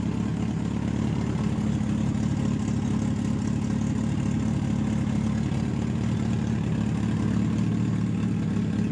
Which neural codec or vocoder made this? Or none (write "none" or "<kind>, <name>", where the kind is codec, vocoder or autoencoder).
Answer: none